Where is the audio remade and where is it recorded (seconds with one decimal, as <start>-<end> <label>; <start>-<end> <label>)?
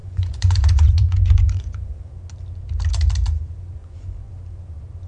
0.0-2.1 remade; 2.1-3.8 recorded; 3.8-4.3 remade; 4.3-5.1 recorded